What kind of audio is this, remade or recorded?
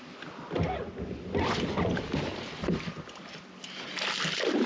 recorded